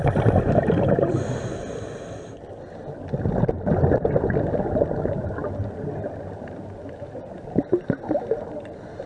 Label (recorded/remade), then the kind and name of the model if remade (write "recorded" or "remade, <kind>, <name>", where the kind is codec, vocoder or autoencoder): recorded